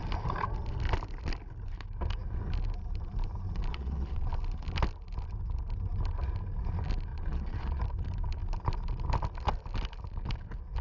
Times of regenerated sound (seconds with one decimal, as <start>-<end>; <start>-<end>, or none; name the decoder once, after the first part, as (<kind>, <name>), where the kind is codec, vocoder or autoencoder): 3.7-4.3 (vocoder, Vocos); 7.1-7.8